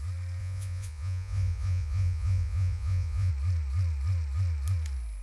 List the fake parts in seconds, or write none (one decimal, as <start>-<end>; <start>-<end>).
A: 0.4-3.3